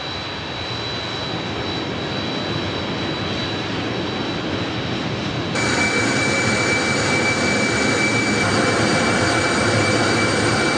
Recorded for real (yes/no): yes